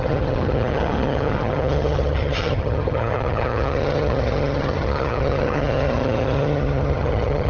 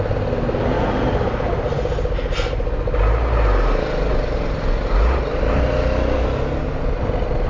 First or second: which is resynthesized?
first